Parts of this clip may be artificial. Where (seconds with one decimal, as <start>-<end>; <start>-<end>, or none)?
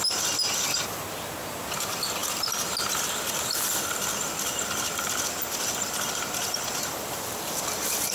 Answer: none